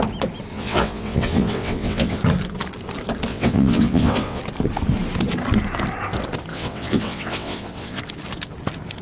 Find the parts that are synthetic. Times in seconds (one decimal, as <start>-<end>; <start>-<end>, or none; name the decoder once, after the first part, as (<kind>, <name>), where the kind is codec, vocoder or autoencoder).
0.5-2.2 (vocoder, WaveNeXt); 3.3-4.4; 6.5-8.0